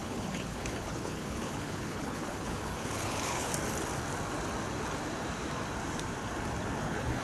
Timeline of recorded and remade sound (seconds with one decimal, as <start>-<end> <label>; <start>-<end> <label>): 0.0-3.5 remade; 3.5-6.8 recorded; 6.8-7.2 remade